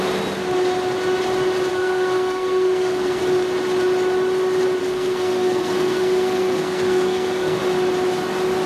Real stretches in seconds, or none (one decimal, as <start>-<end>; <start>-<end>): 0.0-1.7; 3.2-4.8; 7.6-8.7